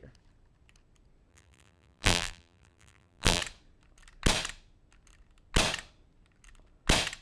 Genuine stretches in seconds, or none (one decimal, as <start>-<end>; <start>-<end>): 0.0-1.3; 3.4-7.2

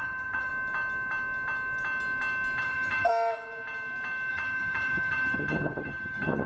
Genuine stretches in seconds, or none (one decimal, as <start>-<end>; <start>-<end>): 0.5-2.6; 3.1-4.3

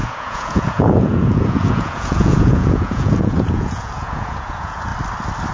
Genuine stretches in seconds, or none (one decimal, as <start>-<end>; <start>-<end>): 4.9-5.5

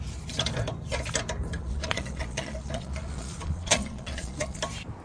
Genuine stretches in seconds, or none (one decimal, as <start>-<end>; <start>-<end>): 0.0-1.6; 4.6-5.0

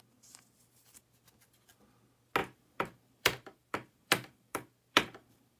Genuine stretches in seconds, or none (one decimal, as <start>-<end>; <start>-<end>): 0.0-2.4

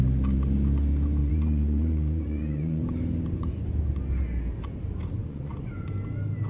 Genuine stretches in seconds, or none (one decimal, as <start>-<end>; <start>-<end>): 0.0-1.2; 2.8-5.2; 5.9-6.5

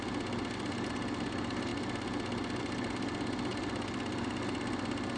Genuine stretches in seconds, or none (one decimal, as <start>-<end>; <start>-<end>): 0.0-5.2

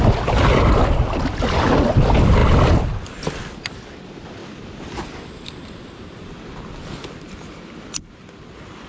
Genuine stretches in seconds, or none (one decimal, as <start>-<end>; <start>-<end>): 0.0-2.4; 3.4-4.4; 6.4-8.9